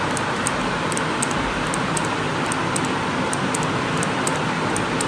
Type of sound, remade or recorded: recorded